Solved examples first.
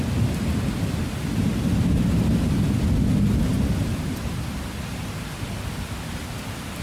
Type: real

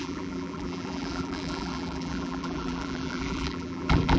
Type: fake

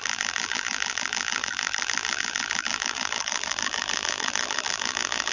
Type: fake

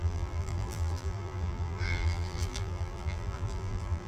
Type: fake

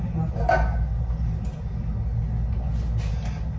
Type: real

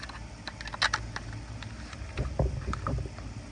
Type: real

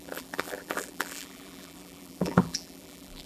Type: fake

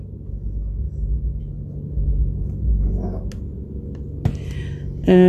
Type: real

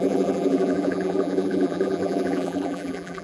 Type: fake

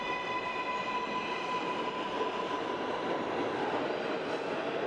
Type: real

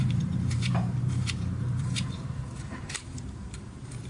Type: fake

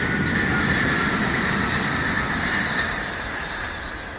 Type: fake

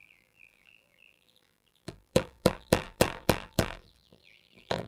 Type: fake